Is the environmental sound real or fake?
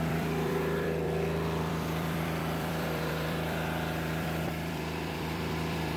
fake